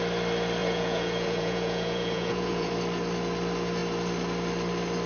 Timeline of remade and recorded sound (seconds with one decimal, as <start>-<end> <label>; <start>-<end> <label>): 0.0-0.6 recorded; 0.6-2.7 remade; 2.7-5.1 recorded